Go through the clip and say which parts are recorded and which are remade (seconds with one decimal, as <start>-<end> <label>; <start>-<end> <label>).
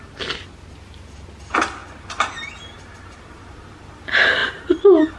0.0-5.2 recorded